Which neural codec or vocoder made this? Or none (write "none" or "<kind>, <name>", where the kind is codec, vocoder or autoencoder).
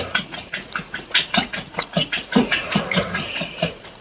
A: vocoder, Vocos